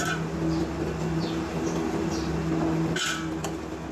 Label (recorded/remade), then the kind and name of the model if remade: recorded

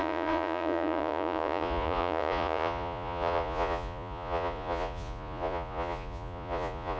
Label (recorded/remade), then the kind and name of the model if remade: remade, vocoder, Vocos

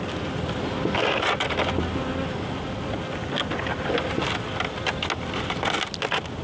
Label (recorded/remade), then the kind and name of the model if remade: recorded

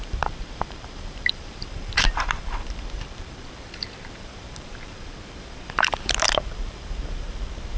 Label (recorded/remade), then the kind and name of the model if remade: remade, vocoder, BigVGAN v2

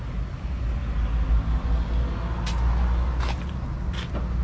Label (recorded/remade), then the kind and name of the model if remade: recorded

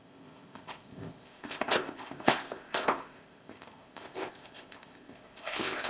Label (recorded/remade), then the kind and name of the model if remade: remade, codec, ZipCodec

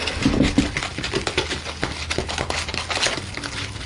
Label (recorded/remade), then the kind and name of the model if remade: recorded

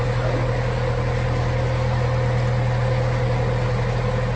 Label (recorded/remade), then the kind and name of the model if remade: recorded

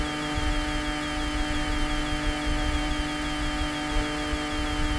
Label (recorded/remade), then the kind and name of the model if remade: recorded